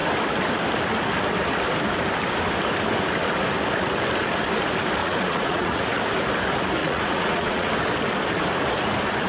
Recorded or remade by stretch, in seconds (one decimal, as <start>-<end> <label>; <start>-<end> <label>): 0.0-5.0 recorded; 5.0-6.0 remade; 6.0-6.8 recorded; 6.8-7.7 remade; 7.7-9.3 recorded